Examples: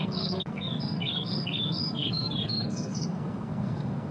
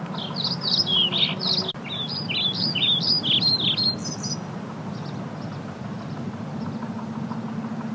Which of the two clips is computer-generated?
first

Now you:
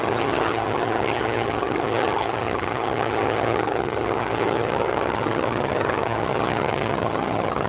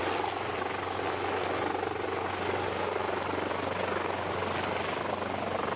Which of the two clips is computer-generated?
first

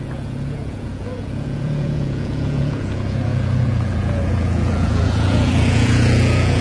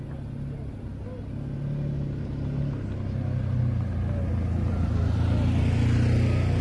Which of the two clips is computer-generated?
first